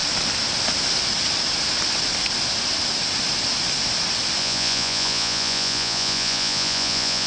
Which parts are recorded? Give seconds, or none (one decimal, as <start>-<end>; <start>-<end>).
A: 0.0-4.4

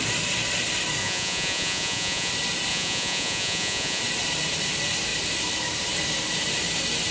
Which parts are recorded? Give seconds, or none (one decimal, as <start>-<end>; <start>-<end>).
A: 0.0-1.0; 2.3-2.7; 4.0-7.1

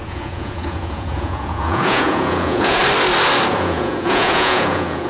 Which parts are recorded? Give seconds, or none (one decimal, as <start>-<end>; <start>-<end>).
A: 2.8-3.5